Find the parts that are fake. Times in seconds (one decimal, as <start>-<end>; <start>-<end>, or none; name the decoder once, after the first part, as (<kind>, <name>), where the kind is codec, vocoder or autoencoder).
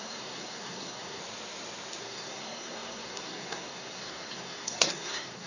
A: 0.0-1.2 (codec, SNAC); 2.0-5.5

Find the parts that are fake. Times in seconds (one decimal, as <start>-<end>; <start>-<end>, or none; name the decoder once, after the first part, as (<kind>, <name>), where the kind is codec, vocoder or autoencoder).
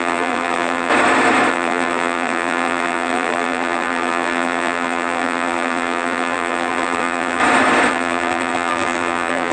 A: 0.0-0.9 (vocoder, BigVGAN v2); 1.5-7.4; 7.9-9.5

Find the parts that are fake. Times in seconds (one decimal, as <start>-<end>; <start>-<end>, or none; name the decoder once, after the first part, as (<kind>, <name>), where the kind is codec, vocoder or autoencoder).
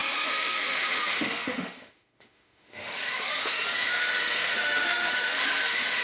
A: 0.0-6.0 (autoencoder, DAC-VAE)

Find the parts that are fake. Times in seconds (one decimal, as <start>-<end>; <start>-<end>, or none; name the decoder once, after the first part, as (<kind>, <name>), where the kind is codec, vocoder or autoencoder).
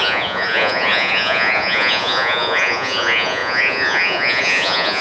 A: 0.0-5.0 (vocoder, Vocos)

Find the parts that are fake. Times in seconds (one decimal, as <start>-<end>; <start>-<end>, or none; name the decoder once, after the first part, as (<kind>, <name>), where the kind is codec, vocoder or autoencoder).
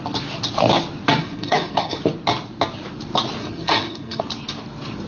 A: 1.2-2.0 (codec, SNAC); 3.4-4.2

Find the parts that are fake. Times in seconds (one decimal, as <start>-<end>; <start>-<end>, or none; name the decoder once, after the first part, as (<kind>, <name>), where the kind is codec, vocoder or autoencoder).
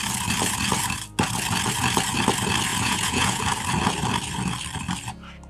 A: 2.7-3.4 (vocoder, Vocos)